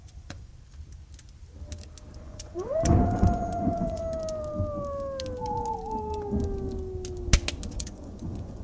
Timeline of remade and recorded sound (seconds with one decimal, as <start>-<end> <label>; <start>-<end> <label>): 0.0-0.5 remade; 0.5-2.2 recorded; 2.2-4.0 remade; 4.0-7.7 recorded; 7.7-8.6 remade